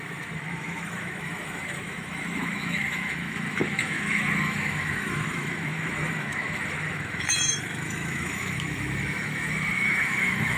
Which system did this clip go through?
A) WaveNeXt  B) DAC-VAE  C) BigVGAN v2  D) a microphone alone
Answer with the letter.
B